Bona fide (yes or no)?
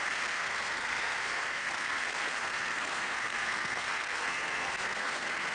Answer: no